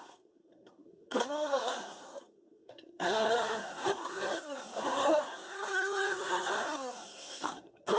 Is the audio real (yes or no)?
no